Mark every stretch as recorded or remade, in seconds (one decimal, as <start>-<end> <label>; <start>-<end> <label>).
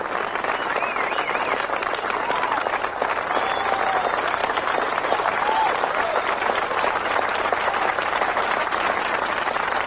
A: 0.0-4.4 recorded; 4.4-9.0 remade; 9.0-9.9 recorded